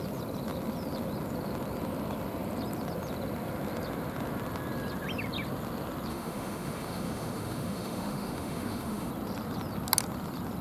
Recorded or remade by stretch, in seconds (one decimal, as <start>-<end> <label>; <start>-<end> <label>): 0.0-6.1 recorded; 6.1-9.1 remade; 9.1-10.6 recorded